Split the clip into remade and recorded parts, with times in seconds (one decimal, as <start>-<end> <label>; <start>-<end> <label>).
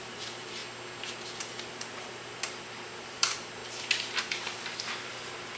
0.0-0.6 remade; 0.6-1.7 recorded; 1.7-3.6 remade; 3.6-4.2 recorded; 4.2-5.6 remade